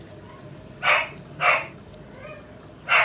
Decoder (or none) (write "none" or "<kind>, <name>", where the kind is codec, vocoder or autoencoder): none